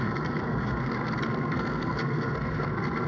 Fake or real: fake